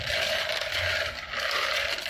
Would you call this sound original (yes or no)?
yes